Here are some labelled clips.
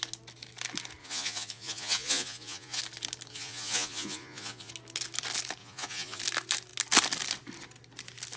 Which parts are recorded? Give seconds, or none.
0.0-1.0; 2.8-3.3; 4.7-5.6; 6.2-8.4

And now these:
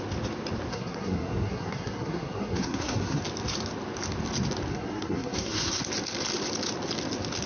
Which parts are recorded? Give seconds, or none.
0.0-0.7; 3.2-4.7; 5.8-7.5

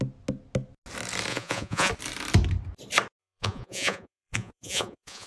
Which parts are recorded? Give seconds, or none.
0.0-1.3; 1.9-3.2

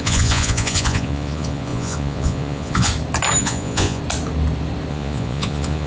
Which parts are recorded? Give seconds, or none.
2.9-3.4; 4.0-4.9